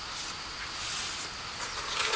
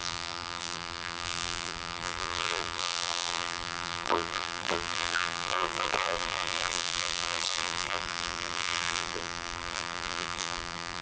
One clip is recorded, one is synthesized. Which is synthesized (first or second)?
second